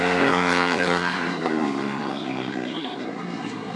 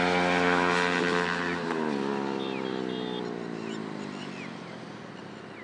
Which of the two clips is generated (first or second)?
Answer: first